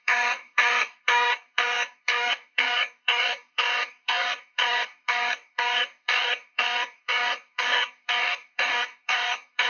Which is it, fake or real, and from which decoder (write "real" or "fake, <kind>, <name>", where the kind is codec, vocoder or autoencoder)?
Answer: fake, codec, DAC